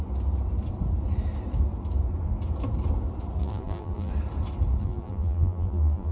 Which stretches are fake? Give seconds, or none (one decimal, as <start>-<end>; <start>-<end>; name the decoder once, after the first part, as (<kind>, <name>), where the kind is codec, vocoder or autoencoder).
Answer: 3.4-4.1 (vocoder, BigVGAN v2); 4.8-6.1